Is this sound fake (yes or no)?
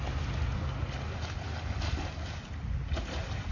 no